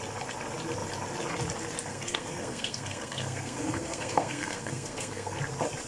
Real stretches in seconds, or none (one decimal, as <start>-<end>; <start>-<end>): 0.0-1.9; 5.4-5.9